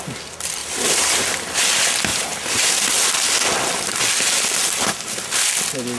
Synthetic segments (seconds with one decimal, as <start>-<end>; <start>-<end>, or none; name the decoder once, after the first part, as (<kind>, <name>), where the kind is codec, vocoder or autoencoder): 0.6-1.2 (vocoder, BigVGAN v2); 2.1-2.7